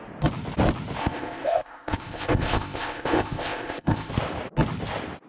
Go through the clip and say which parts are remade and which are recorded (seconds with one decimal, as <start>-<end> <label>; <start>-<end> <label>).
0.0-1.0 recorded; 1.0-4.1 remade; 4.1-5.3 recorded